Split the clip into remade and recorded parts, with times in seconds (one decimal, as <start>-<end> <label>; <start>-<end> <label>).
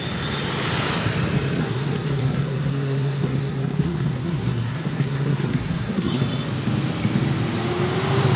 0.0-1.6 recorded; 1.6-6.2 remade; 6.2-8.4 recorded